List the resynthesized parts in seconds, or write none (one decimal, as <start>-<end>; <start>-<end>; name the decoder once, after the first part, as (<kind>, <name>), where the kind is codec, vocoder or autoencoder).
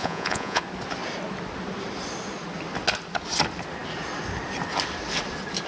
0.0-0.6 (vocoder, Vocos)